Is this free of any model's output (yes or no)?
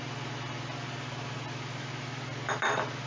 yes